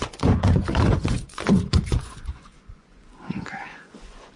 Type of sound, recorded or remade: remade